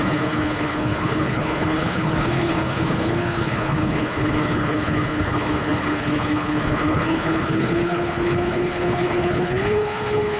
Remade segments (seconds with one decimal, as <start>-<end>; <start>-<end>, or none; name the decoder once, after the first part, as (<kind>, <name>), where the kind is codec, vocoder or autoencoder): 0.0-10.4 (codec, HILCodec)